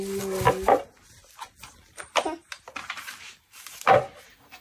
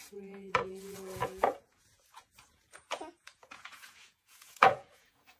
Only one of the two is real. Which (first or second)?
first